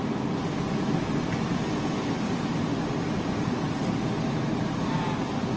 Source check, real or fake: real